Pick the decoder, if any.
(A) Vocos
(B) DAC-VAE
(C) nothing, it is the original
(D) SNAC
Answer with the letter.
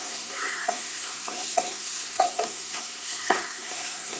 D